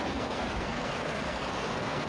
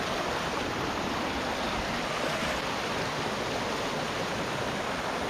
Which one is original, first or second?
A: second